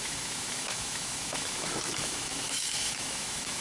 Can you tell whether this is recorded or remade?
remade